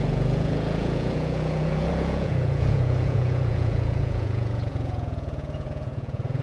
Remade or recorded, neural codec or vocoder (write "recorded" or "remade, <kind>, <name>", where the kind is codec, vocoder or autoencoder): remade, vocoder, Vocos